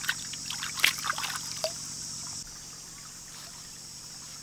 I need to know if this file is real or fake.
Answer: fake